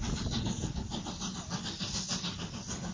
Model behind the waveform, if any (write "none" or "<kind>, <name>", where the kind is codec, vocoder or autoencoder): none